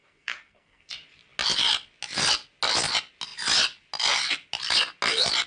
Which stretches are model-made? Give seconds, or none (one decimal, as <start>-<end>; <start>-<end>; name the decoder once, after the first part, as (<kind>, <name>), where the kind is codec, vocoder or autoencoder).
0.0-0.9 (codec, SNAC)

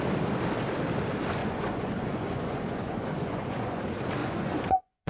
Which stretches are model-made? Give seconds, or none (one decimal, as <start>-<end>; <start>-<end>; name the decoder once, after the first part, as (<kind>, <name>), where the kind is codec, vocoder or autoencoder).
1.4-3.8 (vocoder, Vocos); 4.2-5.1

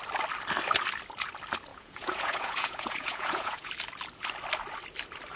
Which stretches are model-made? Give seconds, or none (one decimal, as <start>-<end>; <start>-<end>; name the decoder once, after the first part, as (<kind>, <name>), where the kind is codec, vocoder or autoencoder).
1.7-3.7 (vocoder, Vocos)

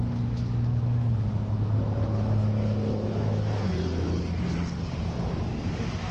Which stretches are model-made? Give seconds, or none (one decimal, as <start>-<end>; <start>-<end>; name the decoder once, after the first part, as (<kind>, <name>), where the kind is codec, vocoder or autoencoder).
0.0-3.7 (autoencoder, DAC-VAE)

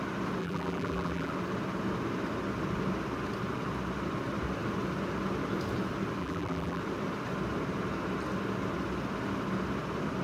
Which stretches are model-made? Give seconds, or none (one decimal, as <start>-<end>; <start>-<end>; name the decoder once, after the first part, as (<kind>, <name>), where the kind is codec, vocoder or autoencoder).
0.4-1.3 (vocoder, BigVGAN v2); 6.2-6.8

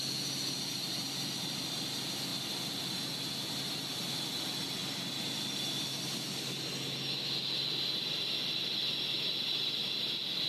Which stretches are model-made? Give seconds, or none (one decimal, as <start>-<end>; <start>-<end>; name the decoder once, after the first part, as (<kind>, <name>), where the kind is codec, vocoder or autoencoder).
none